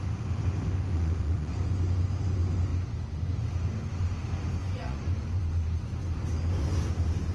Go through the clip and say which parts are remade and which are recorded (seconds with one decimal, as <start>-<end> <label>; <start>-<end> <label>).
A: 0.0-0.9 recorded; 0.9-1.7 remade; 1.7-4.6 recorded; 4.6-5.4 remade; 5.4-7.3 recorded